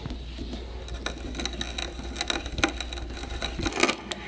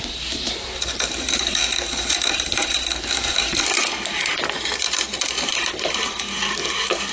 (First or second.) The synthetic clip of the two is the second